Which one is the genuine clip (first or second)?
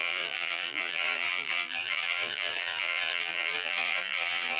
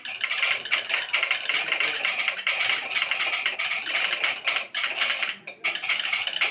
second